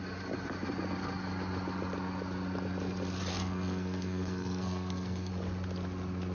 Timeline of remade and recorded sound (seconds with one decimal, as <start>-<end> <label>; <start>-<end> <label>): 0.0-3.3 recorded; 3.3-5.3 remade; 5.3-6.3 recorded